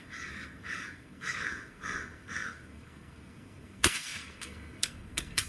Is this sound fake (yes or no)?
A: yes